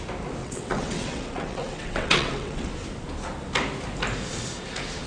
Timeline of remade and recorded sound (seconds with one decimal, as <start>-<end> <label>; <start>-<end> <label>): 0.0-0.4 recorded; 0.4-2.7 remade; 2.7-5.1 recorded